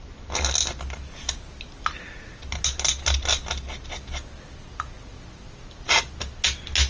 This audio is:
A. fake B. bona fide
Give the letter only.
B